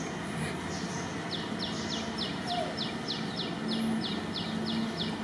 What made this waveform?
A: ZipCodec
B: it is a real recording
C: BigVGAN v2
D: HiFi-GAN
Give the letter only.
B